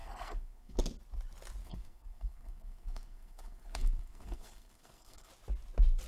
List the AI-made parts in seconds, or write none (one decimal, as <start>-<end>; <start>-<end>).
0.0-0.8; 1.6-5.3